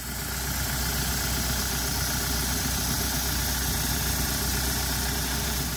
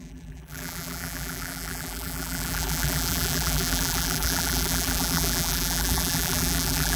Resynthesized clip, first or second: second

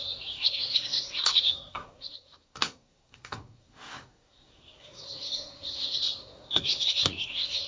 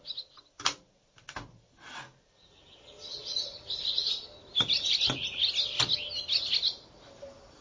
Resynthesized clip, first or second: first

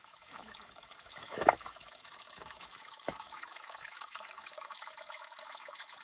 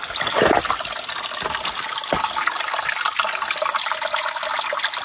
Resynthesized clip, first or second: first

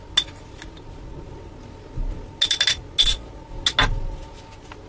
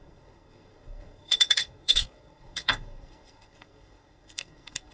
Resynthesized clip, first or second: second